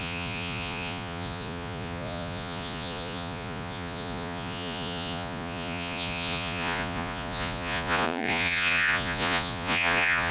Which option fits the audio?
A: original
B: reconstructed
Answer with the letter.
B